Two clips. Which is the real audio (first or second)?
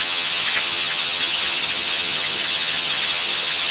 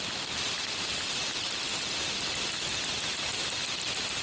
second